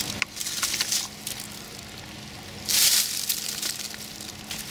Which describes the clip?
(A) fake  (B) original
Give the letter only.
B